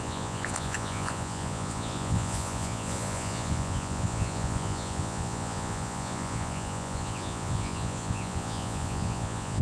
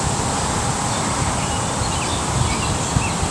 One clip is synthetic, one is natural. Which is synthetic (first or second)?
first